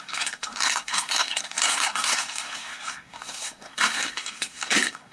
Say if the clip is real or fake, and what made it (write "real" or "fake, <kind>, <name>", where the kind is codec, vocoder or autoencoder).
fake, codec, SNAC